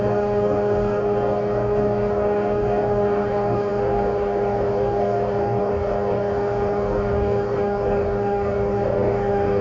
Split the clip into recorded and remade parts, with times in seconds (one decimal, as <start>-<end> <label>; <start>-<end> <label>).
0.0-9.6 remade

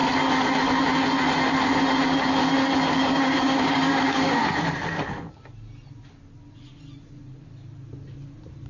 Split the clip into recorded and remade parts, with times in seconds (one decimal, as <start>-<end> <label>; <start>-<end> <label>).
0.0-3.0 recorded; 3.0-4.4 remade; 4.4-8.7 recorded

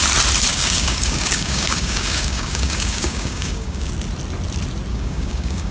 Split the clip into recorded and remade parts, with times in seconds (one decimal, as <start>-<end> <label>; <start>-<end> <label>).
0.0-0.5 recorded; 0.5-3.9 remade; 3.9-4.9 recorded; 4.9-5.7 remade

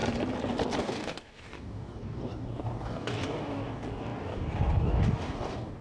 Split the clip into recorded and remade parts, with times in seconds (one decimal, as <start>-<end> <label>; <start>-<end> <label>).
0.0-0.8 recorded; 0.8-5.8 remade

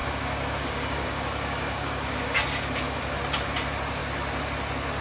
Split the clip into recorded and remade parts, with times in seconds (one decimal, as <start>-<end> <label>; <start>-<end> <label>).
0.0-3.0 remade; 3.0-5.0 recorded

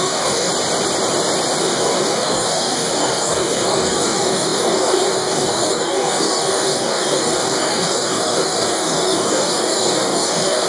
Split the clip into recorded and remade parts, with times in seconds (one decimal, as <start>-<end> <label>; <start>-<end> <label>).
0.0-0.5 remade; 0.5-1.6 recorded; 1.6-10.7 remade